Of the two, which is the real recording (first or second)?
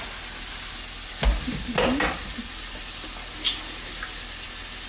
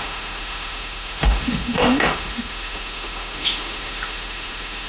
first